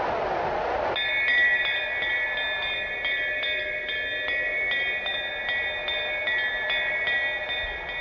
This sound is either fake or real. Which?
real